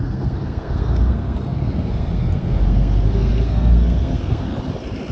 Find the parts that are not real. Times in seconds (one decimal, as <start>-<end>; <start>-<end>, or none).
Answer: 0.0-4.5